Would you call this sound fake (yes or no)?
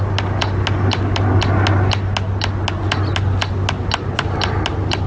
no